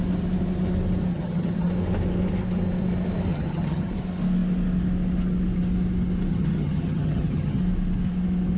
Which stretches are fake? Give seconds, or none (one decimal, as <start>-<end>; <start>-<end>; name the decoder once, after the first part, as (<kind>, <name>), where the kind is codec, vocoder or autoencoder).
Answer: 1.1-1.7 (vocoder, HiFi-GAN); 3.3-3.9; 6.3-7.6